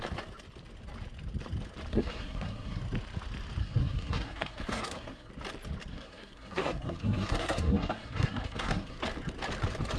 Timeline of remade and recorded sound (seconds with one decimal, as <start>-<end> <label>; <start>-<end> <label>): 0.0-1.9 recorded; 1.9-2.8 remade; 2.8-3.6 recorded; 3.6-5.3 remade; 5.3-5.9 recorded; 5.9-9.0 remade; 9.0-10.0 recorded